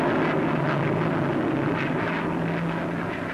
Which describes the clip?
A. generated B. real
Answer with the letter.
B